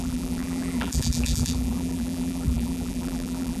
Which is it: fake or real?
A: fake